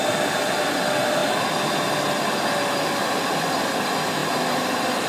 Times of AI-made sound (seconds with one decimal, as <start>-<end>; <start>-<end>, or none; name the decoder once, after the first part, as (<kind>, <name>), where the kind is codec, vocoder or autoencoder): none